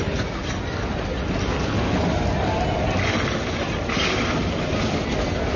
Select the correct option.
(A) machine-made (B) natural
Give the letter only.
B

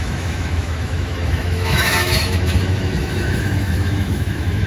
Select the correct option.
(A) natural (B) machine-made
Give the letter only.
B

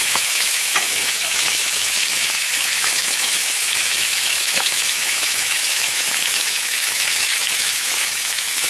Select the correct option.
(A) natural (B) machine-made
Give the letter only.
B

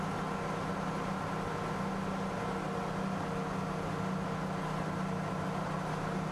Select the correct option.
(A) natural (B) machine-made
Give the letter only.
A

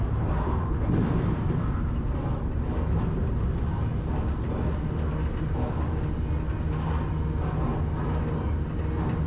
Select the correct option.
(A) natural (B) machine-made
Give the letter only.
A